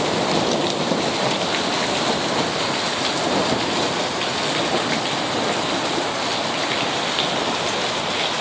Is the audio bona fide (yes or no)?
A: yes